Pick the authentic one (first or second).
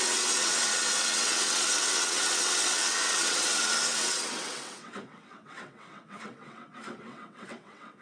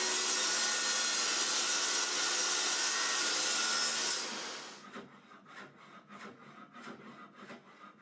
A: second